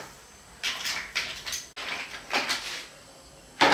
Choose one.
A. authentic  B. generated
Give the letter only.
A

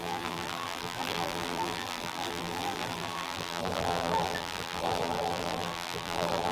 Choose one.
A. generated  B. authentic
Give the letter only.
A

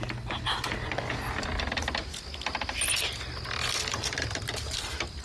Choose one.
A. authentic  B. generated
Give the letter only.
A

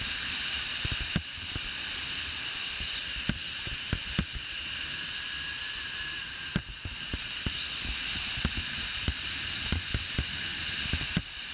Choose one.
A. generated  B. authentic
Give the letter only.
B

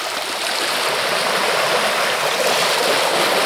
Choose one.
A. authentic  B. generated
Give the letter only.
A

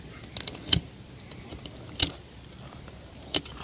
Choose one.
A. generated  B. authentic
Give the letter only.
B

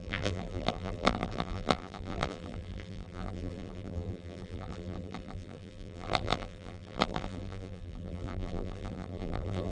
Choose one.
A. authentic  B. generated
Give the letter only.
B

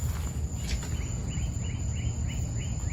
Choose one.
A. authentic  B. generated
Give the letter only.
A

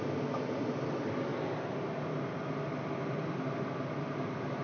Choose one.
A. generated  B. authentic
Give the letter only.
B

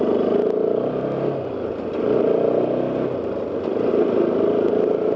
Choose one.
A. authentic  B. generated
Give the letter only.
A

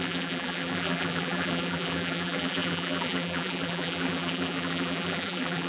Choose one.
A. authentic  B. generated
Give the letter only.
B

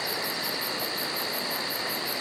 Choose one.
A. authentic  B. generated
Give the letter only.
A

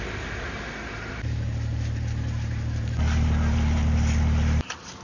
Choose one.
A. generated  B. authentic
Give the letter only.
A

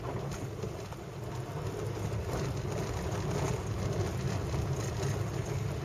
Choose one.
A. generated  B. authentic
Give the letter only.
B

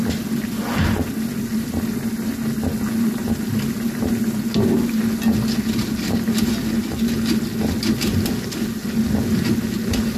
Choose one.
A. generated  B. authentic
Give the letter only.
B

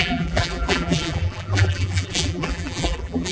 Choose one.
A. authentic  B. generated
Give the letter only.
B